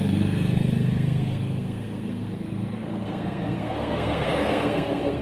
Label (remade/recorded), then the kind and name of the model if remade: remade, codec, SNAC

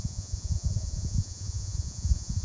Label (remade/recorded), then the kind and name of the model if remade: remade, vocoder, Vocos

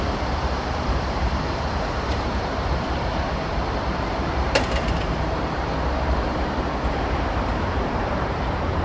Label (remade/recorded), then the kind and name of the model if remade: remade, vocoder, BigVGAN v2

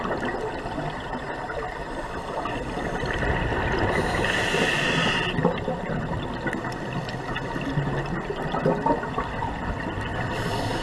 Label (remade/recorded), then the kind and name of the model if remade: recorded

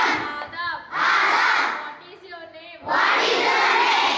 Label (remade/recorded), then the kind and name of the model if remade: recorded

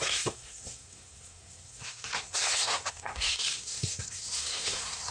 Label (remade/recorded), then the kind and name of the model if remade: remade, codec, SNAC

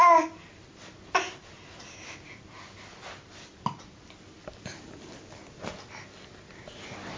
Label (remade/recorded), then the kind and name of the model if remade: recorded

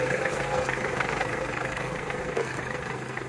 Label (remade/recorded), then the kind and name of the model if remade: remade, codec, SNAC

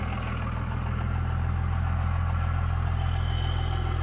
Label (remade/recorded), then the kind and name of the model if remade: recorded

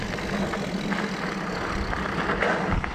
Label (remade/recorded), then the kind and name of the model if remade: recorded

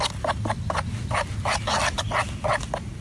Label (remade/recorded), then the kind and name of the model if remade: recorded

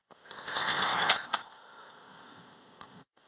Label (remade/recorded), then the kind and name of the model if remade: remade, codec, ZipCodec